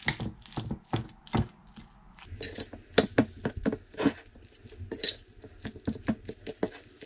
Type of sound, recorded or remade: recorded